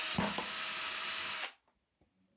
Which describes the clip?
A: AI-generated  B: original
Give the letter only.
B